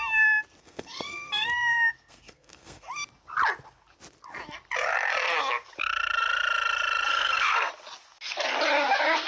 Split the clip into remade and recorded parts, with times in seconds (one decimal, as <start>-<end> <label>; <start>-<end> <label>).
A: 0.0-0.6 recorded; 0.6-2.9 remade; 2.9-7.1 recorded; 7.1-7.7 remade; 7.7-9.3 recorded

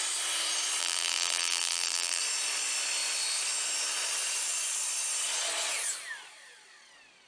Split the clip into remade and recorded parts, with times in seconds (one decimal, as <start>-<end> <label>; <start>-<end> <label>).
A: 0.0-0.8 recorded; 0.8-2.2 remade; 2.2-7.3 recorded

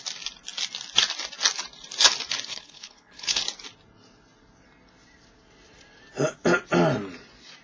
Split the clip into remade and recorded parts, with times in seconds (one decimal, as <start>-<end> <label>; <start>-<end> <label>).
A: 0.0-2.5 recorded; 2.5-3.4 remade; 3.4-7.6 recorded

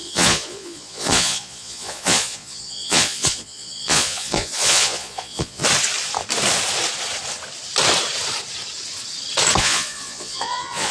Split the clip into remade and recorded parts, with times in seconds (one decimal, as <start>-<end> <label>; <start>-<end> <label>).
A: 0.0-5.6 remade; 5.6-9.6 recorded; 9.6-10.9 remade

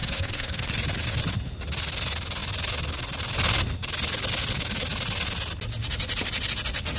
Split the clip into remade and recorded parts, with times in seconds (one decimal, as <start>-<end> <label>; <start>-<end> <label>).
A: 0.0-0.7 remade; 0.7-7.0 recorded